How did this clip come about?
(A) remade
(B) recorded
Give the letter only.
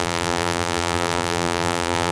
A